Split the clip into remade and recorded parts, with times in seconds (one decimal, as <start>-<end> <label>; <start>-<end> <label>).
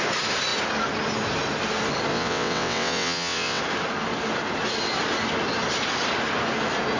0.0-2.1 recorded; 2.1-3.6 remade; 3.6-7.0 recorded